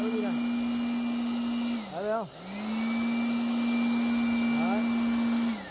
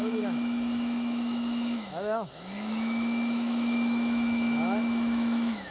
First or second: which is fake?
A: second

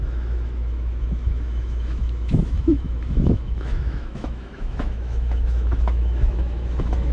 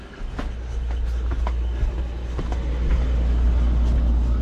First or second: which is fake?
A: first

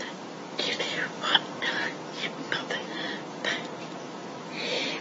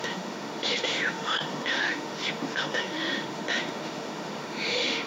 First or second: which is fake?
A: second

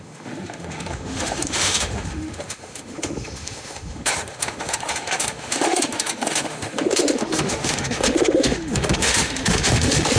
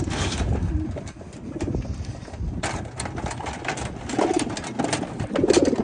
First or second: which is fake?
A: first